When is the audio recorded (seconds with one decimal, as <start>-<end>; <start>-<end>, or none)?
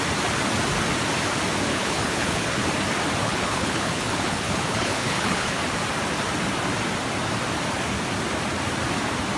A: 0.0-1.7; 2.7-3.2; 5.6-9.4